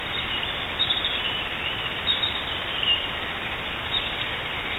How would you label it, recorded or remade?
remade